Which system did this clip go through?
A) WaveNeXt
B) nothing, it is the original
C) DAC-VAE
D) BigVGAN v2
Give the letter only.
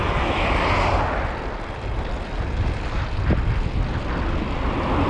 B